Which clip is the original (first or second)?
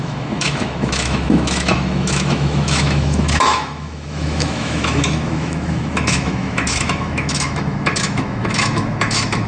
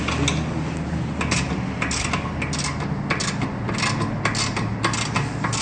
second